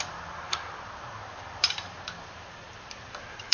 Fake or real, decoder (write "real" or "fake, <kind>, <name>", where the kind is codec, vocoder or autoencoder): fake, vocoder, BigVGAN v2